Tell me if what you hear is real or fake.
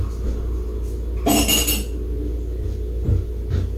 real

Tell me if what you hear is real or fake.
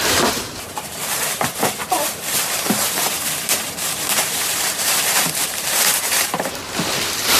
fake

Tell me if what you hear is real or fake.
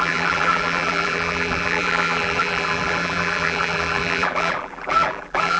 fake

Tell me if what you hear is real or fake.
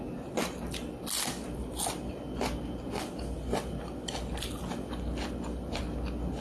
real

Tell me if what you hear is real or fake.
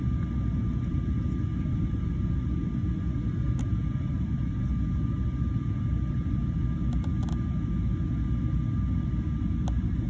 real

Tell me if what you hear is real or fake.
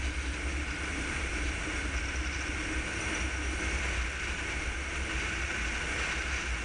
real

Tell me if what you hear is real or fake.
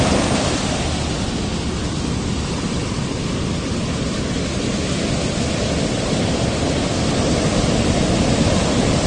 real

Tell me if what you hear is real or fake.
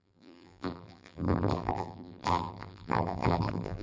fake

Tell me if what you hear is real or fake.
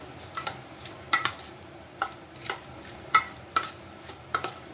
fake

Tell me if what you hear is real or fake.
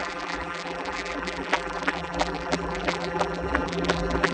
fake